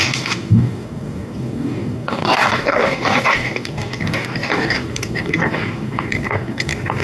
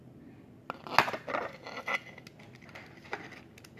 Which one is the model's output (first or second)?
first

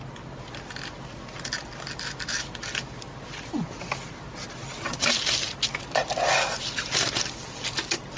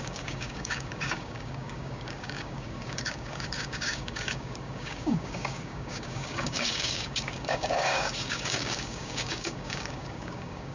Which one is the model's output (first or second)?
second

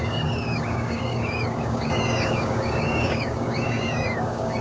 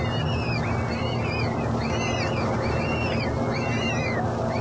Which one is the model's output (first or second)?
first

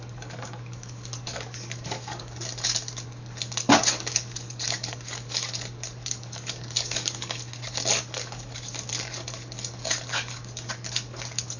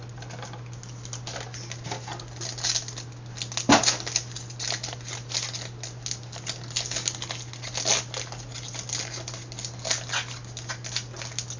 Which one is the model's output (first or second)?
first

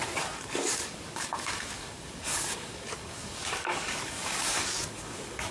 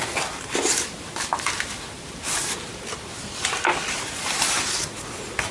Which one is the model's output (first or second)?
first